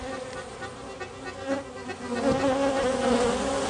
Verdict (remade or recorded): recorded